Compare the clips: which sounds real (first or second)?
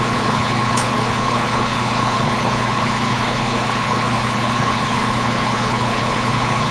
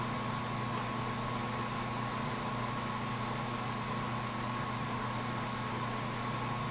second